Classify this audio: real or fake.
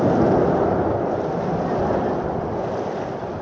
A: real